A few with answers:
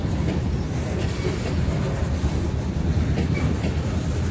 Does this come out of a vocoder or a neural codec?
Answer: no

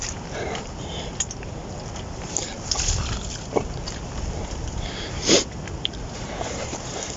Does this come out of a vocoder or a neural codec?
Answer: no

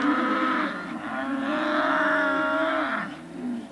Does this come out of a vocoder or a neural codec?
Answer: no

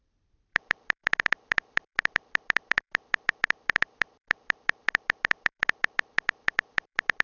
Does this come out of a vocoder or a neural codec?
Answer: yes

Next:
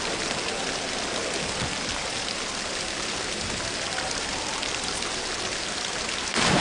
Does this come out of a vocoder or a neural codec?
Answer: no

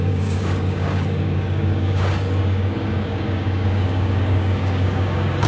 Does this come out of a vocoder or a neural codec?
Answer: yes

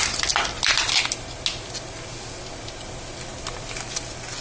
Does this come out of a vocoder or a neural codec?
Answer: no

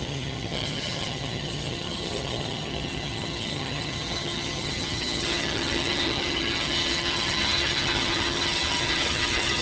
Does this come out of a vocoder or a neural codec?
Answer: yes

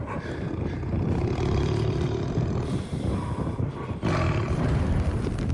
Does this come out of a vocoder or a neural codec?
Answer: yes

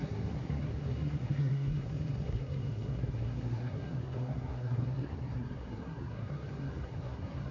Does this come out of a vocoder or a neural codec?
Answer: yes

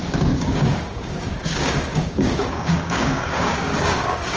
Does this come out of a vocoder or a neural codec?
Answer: yes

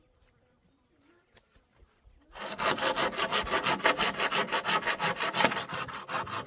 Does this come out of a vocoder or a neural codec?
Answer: no